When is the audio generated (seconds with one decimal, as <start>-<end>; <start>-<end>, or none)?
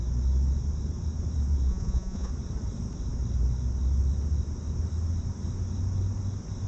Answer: 1.7-2.3